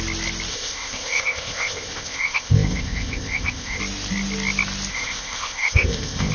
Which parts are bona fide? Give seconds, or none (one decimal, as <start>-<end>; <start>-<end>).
0.0-0.5; 3.8-4.9